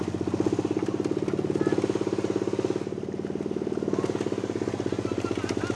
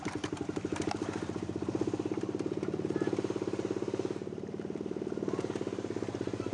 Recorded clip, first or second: first